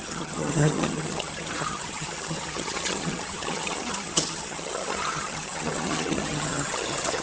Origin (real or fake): fake